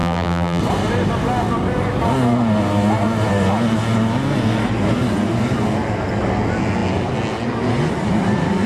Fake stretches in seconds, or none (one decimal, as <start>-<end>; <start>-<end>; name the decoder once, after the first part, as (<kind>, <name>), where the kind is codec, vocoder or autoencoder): 0.0-0.6 (vocoder, BigVGAN v2)